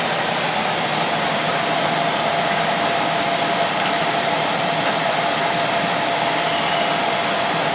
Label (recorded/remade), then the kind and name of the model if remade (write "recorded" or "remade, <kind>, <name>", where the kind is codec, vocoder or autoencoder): recorded